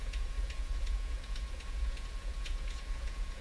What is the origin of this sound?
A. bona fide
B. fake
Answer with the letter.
B